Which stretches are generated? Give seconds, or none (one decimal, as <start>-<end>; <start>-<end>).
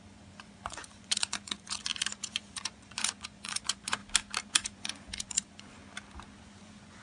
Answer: 0.0-4.0; 4.5-5.8; 6.4-7.0